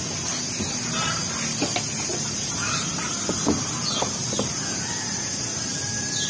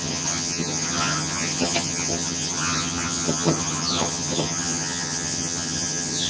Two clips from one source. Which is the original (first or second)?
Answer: first